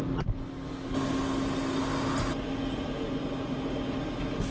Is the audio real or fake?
real